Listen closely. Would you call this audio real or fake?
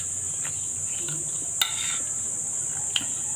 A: real